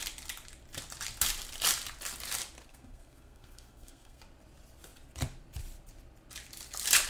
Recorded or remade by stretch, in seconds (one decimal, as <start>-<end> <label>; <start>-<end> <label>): 0.0-2.7 recorded; 2.7-4.2 remade; 4.2-7.1 recorded